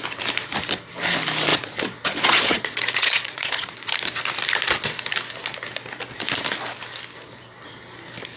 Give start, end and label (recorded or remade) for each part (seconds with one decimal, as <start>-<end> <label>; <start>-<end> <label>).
0.0-1.5 recorded; 1.5-3.9 remade; 3.9-8.4 recorded